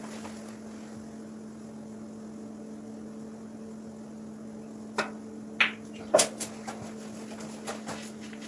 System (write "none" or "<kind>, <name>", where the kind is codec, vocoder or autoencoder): none